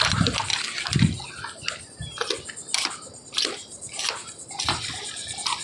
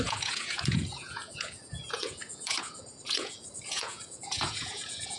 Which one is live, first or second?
first